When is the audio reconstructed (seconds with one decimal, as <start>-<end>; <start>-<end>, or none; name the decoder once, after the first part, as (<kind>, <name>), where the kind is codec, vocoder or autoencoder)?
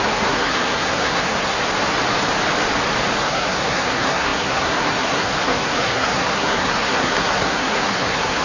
0.0-1.6 (codec, SNAC); 3.2-8.4